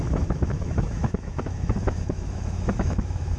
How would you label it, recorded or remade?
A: remade